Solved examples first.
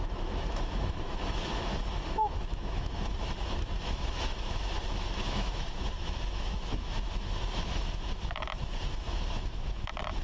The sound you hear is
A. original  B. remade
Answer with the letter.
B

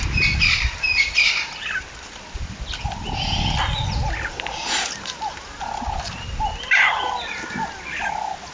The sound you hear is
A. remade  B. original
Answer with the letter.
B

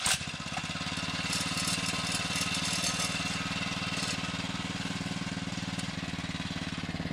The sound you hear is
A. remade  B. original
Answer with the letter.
B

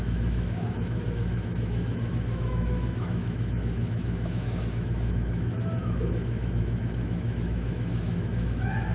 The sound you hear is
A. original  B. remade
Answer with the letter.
B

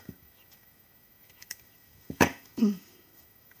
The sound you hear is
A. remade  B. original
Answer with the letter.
A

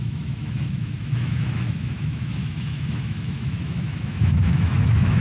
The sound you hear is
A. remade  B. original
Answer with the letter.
A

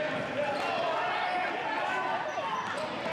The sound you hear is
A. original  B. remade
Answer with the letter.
A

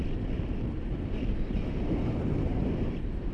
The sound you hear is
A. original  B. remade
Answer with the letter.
A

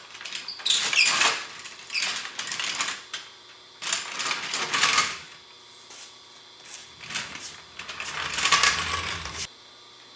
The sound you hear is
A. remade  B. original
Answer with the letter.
B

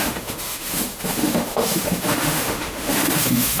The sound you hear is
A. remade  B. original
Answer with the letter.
A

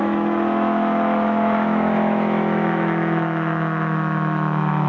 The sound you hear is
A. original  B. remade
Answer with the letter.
B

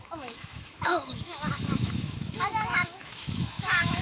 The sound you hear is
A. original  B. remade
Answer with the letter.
B